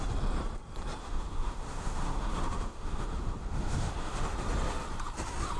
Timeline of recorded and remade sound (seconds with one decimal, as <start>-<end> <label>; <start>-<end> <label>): 0.0-1.0 recorded; 1.0-4.3 remade; 4.3-5.6 recorded